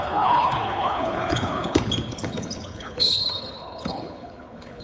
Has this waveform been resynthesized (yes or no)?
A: yes